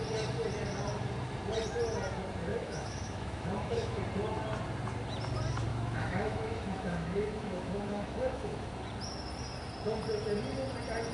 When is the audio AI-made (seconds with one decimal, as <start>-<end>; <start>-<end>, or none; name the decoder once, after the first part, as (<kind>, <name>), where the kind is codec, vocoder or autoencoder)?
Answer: 2.5-4.0 (autoencoder, DAC-VAE); 5.7-8.7